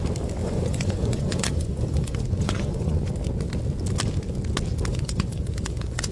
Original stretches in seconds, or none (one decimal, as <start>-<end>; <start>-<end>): 0.0-0.4; 3.1-4.9